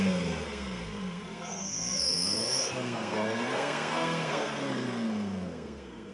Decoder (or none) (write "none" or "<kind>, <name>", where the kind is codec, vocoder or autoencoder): codec, SNAC